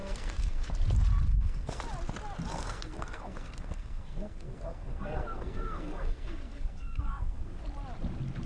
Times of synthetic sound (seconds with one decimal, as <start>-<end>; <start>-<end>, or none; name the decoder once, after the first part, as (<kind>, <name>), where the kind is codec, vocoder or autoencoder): 0.0-0.7 (codec, SNAC); 1.3-1.8; 2.5-7.6